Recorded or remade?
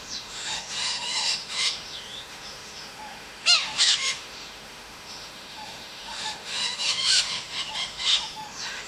remade